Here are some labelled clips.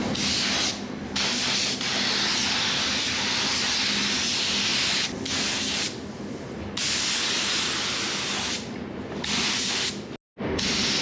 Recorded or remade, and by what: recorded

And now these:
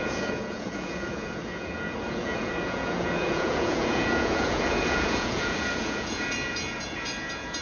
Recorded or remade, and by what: remade, vocoder, Vocos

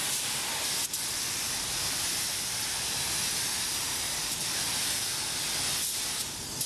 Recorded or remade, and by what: recorded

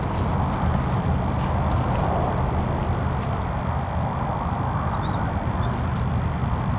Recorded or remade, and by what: recorded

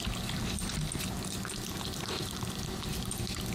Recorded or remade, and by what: recorded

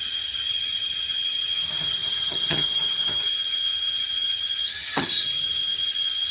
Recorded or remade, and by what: remade, vocoder, HiFi-GAN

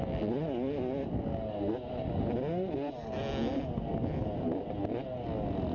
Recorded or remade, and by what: recorded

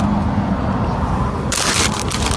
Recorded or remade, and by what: recorded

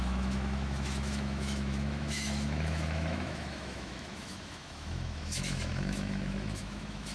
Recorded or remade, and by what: remade, autoencoder, DAC-VAE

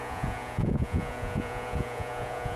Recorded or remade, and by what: remade, vocoder, Vocos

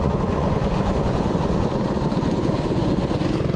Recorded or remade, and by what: remade, vocoder, Vocos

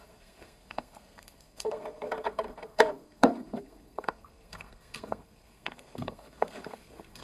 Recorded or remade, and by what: remade, codec, SNAC